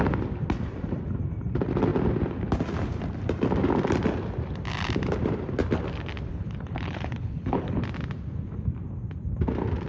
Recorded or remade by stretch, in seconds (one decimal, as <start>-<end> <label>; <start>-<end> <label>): 0.0-6.3 recorded; 6.3-7.8 remade; 7.8-9.9 recorded